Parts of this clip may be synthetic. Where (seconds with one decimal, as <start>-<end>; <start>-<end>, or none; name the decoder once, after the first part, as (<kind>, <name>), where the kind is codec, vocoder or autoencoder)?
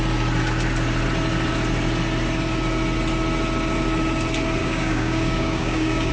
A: 4.6-6.1 (codec, DAC)